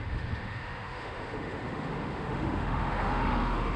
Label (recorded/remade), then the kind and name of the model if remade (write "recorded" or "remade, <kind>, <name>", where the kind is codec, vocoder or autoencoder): remade, autoencoder, DAC-VAE